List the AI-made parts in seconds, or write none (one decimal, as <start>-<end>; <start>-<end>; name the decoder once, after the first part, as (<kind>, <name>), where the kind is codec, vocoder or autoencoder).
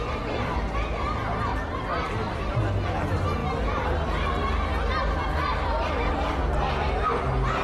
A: 1.5-2.5 (vocoder, BigVGAN v2)